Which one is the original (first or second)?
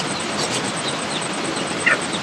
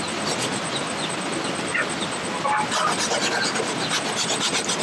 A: second